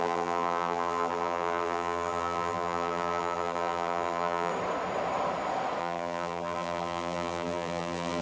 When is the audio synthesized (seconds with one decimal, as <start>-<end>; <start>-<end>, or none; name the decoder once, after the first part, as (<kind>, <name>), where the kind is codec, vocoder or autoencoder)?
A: 0.0-4.5 (vocoder, BigVGAN v2); 5.8-8.2